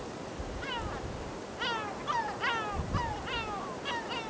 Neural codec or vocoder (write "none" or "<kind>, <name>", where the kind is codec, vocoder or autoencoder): none